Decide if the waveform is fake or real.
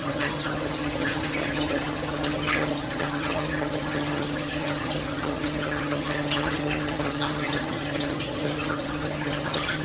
fake